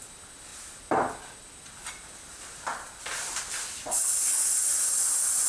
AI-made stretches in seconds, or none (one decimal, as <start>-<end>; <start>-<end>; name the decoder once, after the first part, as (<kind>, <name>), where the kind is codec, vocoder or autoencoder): 2.7-5.5 (vocoder, BigVGAN v2)